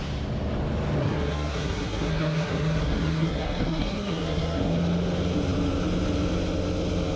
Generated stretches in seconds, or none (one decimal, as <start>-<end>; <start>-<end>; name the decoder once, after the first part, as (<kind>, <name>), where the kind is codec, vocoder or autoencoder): 1.0-4.7 (codec, SNAC)